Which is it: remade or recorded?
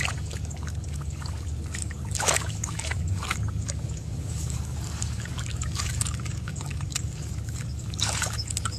remade